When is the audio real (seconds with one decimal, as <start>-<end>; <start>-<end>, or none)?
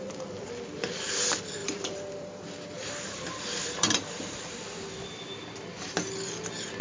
0.0-1.6; 4.6-6.8